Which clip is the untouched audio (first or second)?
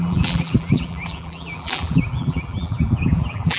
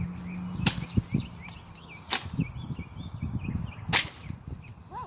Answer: second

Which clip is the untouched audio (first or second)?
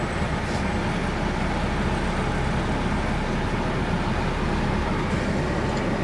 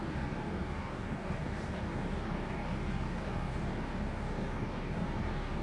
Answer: first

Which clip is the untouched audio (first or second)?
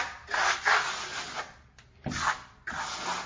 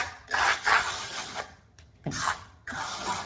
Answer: first